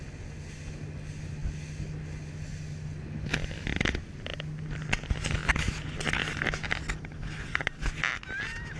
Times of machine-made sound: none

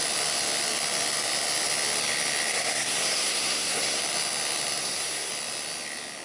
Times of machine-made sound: 2.5-4.0 (codec, SNAC); 4.8-5.3

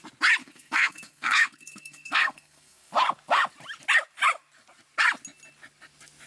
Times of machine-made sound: 0.4-2.9 (codec, SNAC)

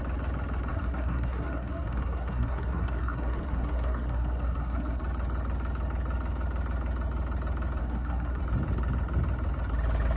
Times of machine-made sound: 0.7-5.0 (codec, SNAC); 7.8-8.4

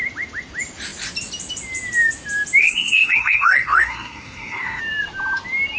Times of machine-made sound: 2.6-4.8 (codec, SNAC)

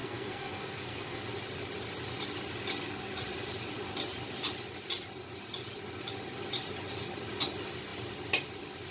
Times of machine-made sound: 0.0-1.2 (codec, SNAC)

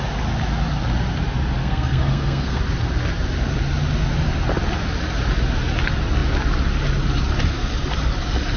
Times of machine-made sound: 1.6-2.6 (codec, SNAC)